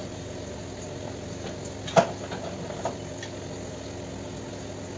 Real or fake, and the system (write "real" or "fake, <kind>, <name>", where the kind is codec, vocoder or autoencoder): real